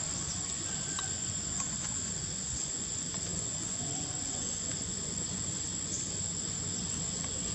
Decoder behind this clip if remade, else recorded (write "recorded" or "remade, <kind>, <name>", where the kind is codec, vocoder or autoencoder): remade, vocoder, Vocos